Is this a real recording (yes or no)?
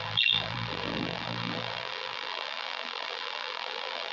no